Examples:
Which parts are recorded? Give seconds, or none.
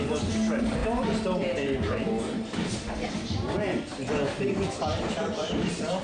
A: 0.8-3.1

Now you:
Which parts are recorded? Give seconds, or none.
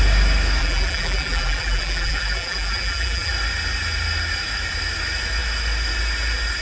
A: 0.0-0.6; 3.3-6.6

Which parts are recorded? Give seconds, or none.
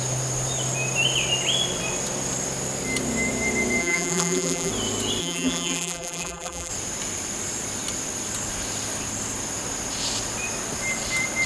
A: 0.0-3.8; 4.7-5.2; 6.7-11.5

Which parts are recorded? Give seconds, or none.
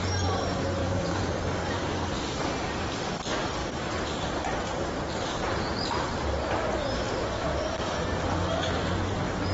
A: 0.0-0.8; 1.3-3.6; 5.5-7.5; 8.2-9.5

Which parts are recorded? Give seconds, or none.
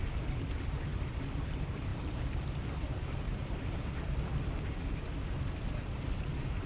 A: 0.9-1.4